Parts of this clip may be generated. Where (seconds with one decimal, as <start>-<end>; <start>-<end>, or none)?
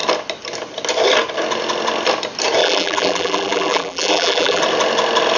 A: 2.6-4.6